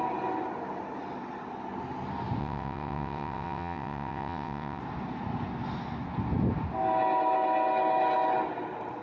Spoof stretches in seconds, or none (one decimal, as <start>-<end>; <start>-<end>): 2.4-4.8

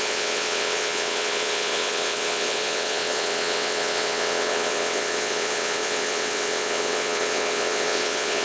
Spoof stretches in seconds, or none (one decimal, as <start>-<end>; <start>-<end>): 0.0-8.4

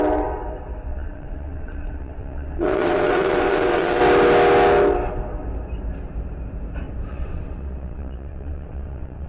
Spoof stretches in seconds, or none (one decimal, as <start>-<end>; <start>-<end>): 0.9-4.0; 7.1-9.3

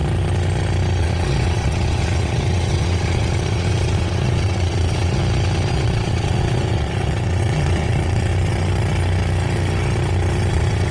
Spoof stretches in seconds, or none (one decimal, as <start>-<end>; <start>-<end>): 1.0-5.2; 5.7-8.3; 10.5-10.9

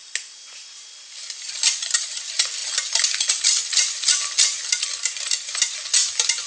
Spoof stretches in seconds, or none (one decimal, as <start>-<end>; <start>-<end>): none

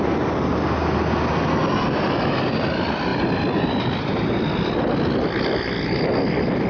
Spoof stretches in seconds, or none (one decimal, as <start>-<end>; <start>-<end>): none

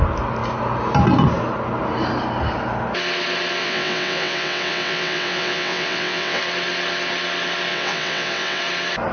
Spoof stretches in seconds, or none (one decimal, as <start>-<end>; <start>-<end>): 3.6-6.4; 7.7-8.6